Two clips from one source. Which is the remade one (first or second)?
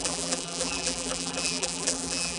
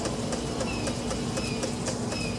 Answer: first